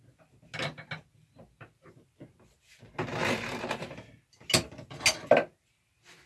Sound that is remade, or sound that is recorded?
recorded